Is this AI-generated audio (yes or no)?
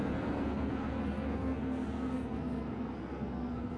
yes